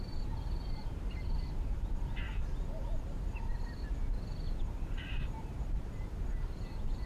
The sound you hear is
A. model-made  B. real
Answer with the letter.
B